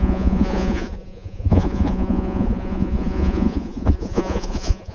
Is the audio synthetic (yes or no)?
yes